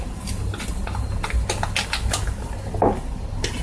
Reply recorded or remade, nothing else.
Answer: recorded